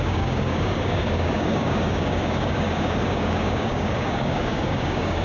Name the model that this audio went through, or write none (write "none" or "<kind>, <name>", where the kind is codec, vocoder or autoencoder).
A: codec, DAC